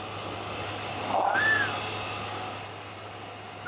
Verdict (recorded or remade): recorded